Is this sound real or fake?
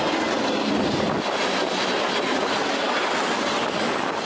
real